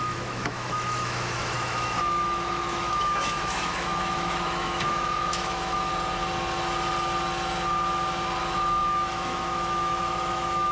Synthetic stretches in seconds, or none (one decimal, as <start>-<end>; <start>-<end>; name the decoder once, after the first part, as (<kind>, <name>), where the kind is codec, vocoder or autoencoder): 0.0-5.9 (autoencoder, DAC-VAE); 8.4-10.7